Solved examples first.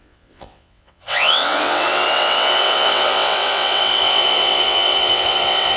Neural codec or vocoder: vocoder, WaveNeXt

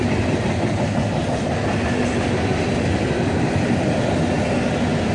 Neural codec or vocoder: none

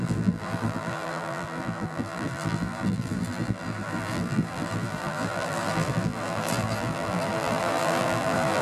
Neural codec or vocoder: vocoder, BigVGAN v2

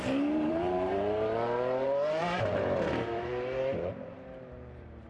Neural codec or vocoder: vocoder, BigVGAN v2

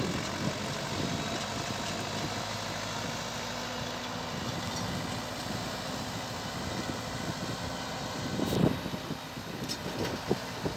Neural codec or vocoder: none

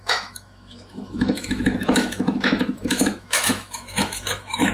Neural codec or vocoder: autoencoder, DAC-VAE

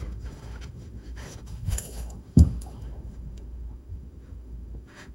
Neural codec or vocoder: autoencoder, DAC-VAE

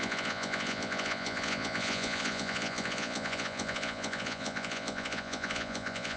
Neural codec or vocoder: vocoder, Vocos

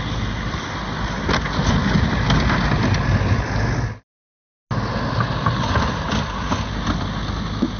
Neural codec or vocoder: none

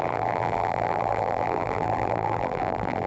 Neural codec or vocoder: vocoder, BigVGAN v2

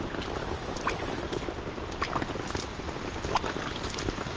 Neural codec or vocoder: none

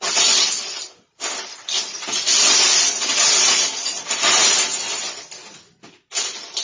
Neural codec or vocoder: none